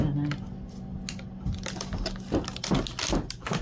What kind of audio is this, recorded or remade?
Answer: recorded